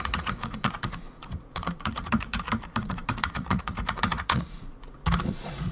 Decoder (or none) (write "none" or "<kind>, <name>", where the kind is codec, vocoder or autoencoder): vocoder, Vocos